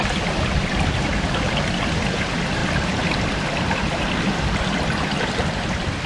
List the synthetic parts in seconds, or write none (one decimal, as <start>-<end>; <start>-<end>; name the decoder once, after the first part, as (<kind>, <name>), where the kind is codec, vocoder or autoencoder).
none